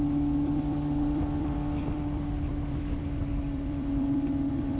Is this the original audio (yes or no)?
no